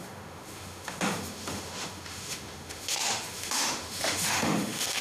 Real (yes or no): no